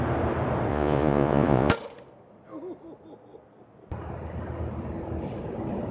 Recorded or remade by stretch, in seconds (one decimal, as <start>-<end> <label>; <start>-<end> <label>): 0.0-0.7 recorded; 0.7-1.7 remade; 1.7-5.9 recorded

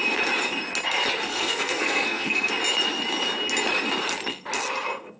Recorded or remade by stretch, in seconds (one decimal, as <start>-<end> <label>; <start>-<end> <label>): 0.0-1.3 recorded; 1.3-2.5 remade; 2.5-5.2 recorded

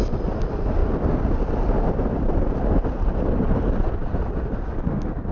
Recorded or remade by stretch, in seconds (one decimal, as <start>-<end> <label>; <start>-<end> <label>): 0.0-5.3 recorded

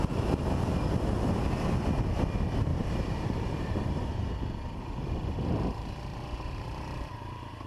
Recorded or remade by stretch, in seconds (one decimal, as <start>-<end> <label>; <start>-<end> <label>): 0.0-2.7 recorded; 2.7-4.0 remade; 4.0-6.1 recorded; 6.1-7.7 remade